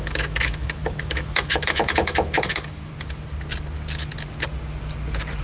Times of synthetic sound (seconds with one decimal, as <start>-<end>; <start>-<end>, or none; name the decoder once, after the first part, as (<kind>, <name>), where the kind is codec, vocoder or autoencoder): 0.0-2.9 (autoencoder, DAC-VAE)